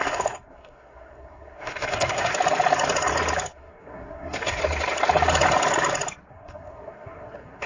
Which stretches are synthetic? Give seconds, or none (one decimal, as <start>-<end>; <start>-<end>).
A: 0.0-2.3; 3.5-4.6; 6.3-7.7